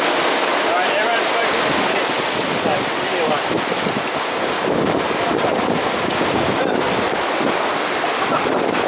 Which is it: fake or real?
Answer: real